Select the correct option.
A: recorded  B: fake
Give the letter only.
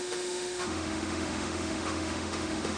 B